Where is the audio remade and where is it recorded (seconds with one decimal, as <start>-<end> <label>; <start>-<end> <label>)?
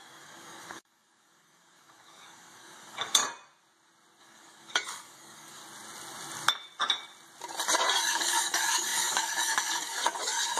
0.0-3.2 remade; 3.2-4.2 recorded; 4.2-5.6 remade; 5.6-8.1 recorded; 8.1-10.6 remade